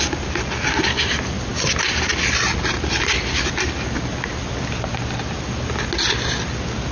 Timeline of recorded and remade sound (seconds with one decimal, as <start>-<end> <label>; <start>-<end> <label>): 0.0-6.9 recorded